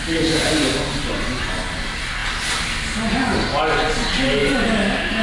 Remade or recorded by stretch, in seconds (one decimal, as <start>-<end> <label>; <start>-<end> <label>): 0.0-5.2 recorded